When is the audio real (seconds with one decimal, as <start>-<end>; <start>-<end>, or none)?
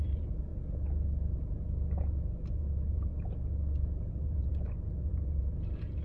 0.5-2.5; 3.1-4.1